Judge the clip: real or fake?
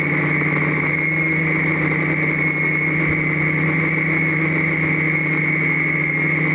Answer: real